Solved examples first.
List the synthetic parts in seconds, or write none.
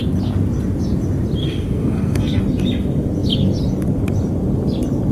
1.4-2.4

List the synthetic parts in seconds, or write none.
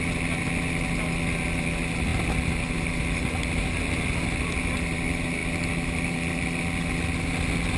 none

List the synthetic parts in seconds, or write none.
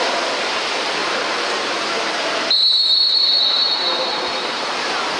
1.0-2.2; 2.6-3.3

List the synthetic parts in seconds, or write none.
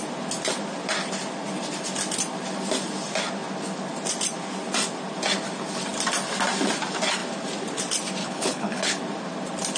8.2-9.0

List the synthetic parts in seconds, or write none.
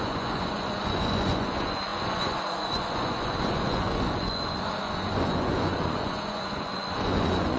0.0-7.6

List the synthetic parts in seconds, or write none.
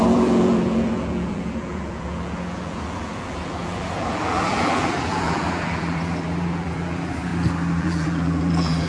0.0-7.3; 7.8-8.9